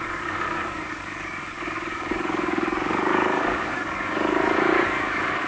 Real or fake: fake